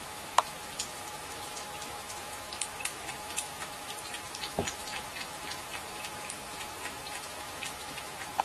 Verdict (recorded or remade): remade